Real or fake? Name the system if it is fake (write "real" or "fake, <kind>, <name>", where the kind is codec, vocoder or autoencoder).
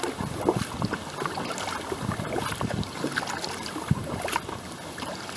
real